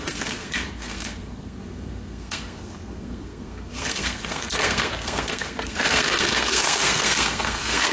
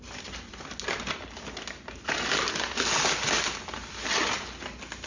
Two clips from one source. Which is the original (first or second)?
second